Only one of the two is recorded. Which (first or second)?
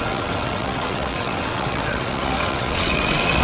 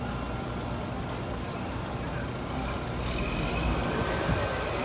second